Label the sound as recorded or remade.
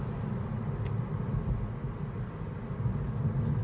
recorded